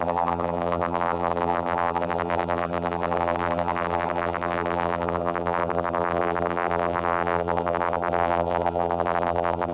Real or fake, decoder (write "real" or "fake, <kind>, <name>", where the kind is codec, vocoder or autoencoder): fake, vocoder, BigVGAN v2